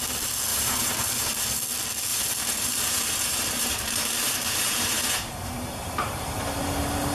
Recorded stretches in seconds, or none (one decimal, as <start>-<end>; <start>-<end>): 0.0-0.5; 1.1-2.1; 6.4-7.1